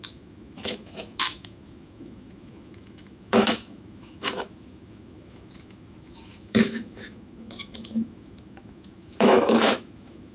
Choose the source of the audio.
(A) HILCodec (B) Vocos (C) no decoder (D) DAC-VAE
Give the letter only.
D